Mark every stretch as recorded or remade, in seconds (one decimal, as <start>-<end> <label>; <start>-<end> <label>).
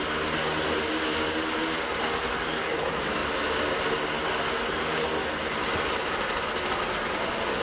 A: 0.0-7.6 recorded